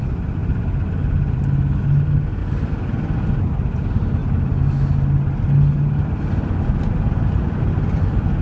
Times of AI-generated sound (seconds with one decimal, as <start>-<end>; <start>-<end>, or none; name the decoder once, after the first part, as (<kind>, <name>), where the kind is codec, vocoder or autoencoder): 0.4-1.4 (vocoder, BigVGAN v2)